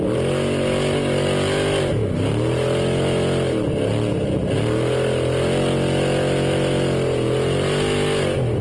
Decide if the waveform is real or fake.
real